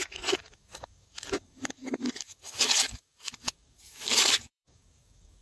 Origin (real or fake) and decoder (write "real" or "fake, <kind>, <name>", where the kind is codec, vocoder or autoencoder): fake, codec, DAC